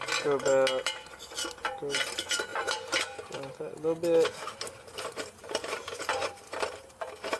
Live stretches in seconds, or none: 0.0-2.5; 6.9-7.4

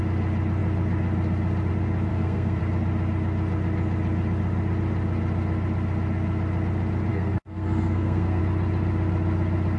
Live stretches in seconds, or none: 0.0-2.1; 2.6-7.1; 8.4-9.8

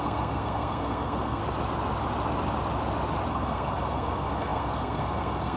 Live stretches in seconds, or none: 1.4-3.3